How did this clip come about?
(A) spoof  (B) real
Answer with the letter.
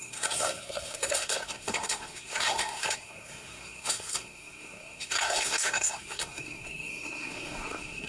A